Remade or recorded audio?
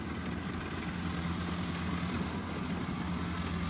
recorded